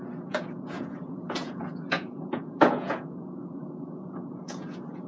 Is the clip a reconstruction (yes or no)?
yes